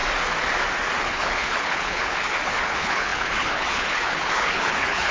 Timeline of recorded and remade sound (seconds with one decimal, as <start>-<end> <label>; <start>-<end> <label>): 0.0-1.0 recorded; 1.0-5.1 remade